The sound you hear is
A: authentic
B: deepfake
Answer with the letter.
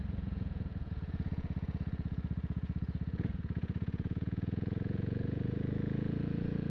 B